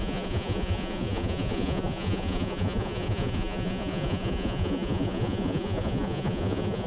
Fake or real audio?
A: fake